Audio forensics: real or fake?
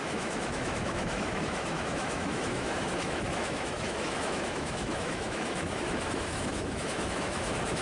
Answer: fake